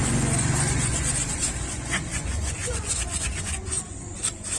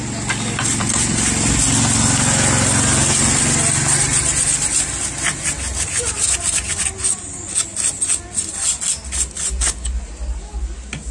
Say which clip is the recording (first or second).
second